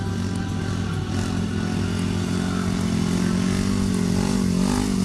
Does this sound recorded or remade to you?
recorded